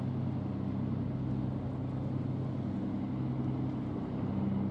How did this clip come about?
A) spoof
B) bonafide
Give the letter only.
B